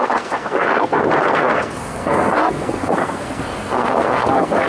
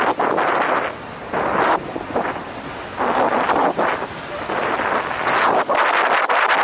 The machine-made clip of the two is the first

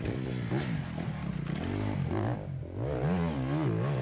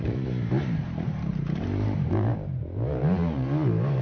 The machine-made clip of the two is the second